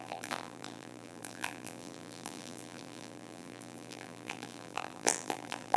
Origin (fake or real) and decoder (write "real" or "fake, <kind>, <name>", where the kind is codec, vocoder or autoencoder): fake, vocoder, BigVGAN v2